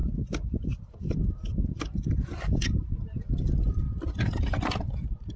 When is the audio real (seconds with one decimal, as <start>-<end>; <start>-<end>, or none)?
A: 3.2-5.4